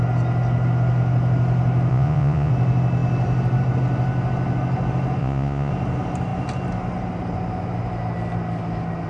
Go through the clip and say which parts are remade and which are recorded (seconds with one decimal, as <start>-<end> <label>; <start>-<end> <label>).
0.0-1.9 recorded; 1.9-2.5 remade; 2.5-5.2 recorded; 5.2-5.7 remade; 5.7-9.1 recorded